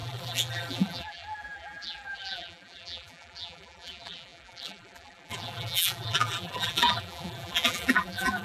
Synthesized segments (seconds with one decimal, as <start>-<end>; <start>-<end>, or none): 0.0-8.4